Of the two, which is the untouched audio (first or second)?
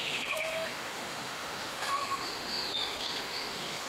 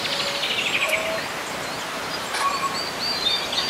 second